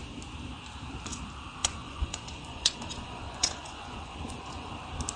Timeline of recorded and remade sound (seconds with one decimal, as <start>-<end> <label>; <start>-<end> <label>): 0.0-1.6 recorded; 1.6-4.7 remade; 4.7-5.2 recorded